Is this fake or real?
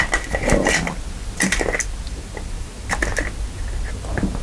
real